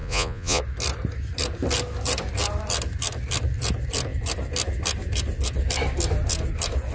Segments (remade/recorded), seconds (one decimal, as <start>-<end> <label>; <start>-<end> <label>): 0.0-0.6 remade; 0.6-6.9 recorded